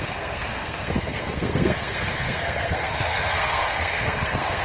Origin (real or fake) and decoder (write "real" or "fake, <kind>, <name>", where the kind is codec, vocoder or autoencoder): fake, codec, SNAC